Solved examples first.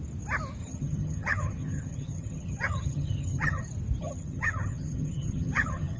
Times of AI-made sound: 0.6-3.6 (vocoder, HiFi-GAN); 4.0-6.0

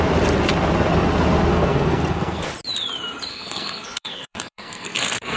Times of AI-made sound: 1.5-2.5 (codec, SNAC); 3.3-5.4